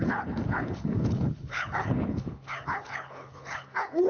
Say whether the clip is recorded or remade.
remade